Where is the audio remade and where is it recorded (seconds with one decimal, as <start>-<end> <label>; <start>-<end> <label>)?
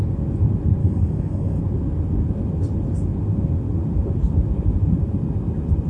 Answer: 0.0-0.8 recorded; 0.8-1.6 remade; 1.6-5.9 recorded